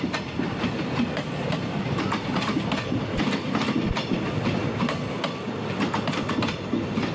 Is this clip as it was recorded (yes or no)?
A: yes